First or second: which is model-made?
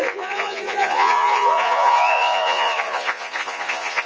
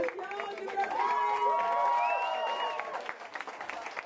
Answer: first